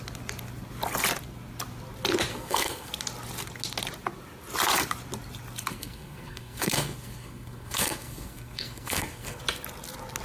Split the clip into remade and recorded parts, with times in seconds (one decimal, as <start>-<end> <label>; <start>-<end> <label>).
0.0-2.3 recorded; 2.3-2.9 remade; 2.9-5.7 recorded; 5.7-9.4 remade; 9.4-10.2 recorded